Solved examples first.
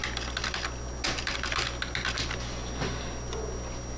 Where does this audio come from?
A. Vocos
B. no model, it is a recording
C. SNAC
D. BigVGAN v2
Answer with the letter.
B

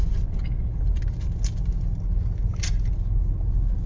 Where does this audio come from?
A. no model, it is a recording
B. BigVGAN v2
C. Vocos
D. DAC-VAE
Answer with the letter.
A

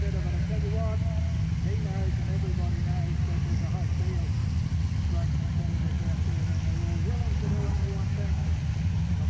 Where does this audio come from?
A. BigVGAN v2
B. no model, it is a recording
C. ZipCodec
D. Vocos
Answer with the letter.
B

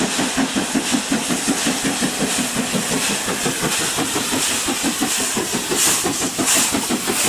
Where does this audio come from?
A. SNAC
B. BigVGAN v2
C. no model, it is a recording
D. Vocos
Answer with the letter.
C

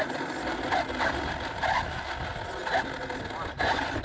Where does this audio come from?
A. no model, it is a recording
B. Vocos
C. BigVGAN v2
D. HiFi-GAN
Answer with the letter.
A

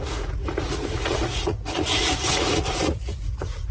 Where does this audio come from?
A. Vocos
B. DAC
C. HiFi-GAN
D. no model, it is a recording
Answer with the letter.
A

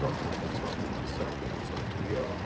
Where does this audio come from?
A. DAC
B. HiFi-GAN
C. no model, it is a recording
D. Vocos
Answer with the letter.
D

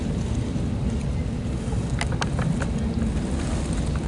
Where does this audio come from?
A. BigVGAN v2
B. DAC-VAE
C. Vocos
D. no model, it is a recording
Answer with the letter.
D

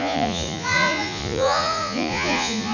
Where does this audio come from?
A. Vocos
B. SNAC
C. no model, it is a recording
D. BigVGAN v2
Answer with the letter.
A